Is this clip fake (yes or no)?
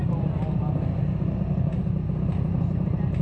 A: no